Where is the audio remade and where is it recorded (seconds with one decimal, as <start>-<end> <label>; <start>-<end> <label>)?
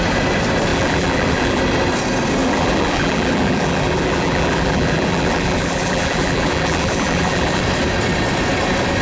0.0-0.7 recorded; 0.7-1.6 remade; 1.6-2.4 recorded; 2.4-7.6 remade; 7.6-9.0 recorded